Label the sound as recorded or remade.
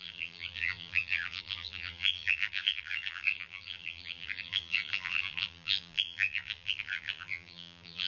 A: remade